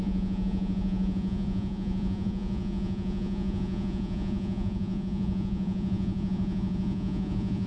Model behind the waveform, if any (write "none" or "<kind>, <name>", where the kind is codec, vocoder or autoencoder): vocoder, Vocos